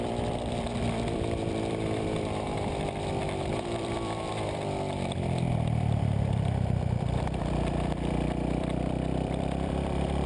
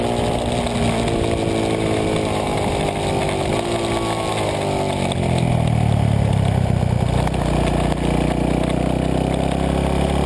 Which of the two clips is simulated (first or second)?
first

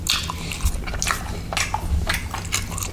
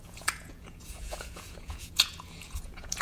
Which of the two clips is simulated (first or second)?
second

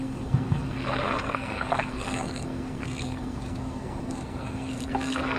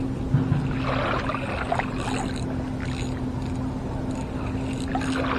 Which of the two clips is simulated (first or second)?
first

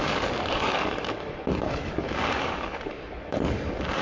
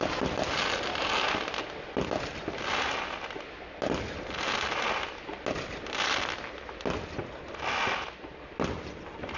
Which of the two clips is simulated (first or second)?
first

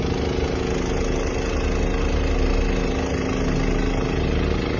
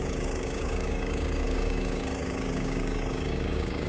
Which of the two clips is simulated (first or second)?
second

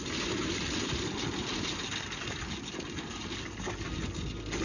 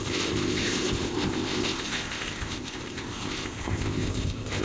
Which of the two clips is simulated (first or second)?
second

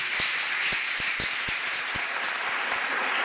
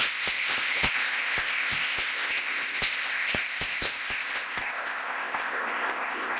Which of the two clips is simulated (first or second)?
second